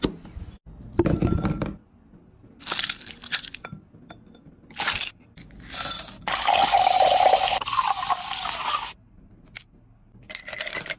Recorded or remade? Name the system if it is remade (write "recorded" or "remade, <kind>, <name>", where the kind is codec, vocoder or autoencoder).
recorded